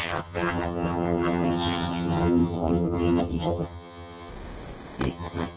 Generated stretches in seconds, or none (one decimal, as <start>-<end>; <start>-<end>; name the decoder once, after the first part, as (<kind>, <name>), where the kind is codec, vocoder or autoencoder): 0.0-4.3 (vocoder, HiFi-GAN); 5.1-5.6